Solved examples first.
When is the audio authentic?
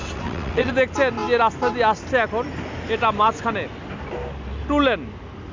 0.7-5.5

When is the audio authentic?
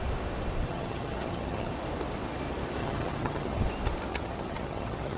0.0-0.7; 1.7-2.8; 3.6-4.1